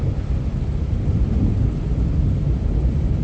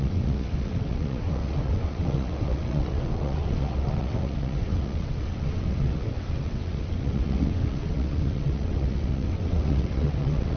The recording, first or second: first